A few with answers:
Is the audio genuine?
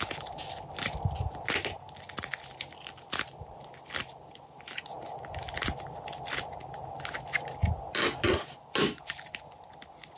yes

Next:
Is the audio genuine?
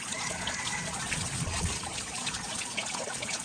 no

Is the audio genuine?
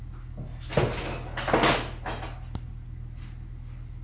yes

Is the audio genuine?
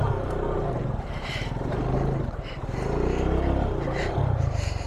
no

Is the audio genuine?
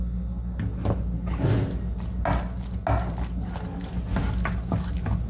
yes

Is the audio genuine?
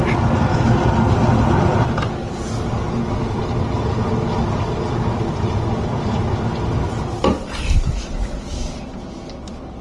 yes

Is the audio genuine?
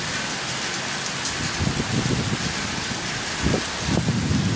yes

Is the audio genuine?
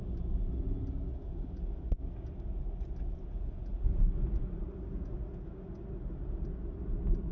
yes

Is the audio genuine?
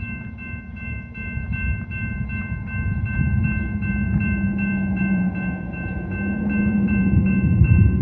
no